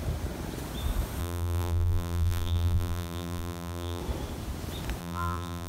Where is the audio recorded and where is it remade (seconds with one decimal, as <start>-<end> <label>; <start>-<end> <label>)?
0.0-1.2 recorded; 1.2-4.0 remade; 4.0-5.0 recorded; 5.0-5.7 remade